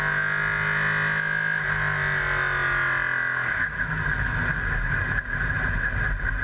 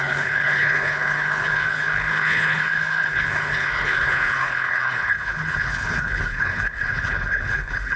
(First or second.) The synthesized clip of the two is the second